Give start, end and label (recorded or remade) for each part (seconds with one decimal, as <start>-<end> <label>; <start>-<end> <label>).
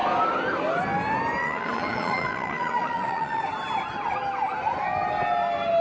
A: 0.0-1.4 recorded; 1.4-3.4 remade; 3.4-5.8 recorded